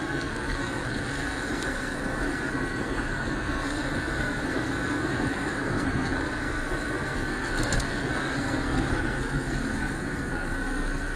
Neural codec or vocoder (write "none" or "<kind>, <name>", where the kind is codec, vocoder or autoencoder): codec, SNAC